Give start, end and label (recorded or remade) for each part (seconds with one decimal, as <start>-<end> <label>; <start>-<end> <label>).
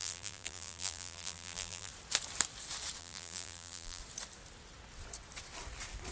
0.0-1.9 remade; 1.9-3.0 recorded; 3.0-4.0 remade; 4.0-6.1 recorded